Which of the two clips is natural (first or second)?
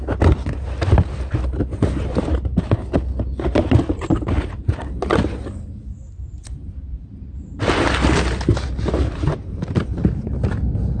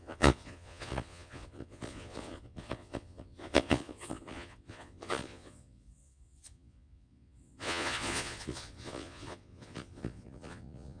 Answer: first